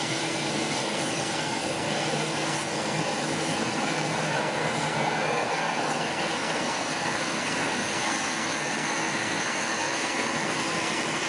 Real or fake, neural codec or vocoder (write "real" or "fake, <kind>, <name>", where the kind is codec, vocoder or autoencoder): fake, codec, SNAC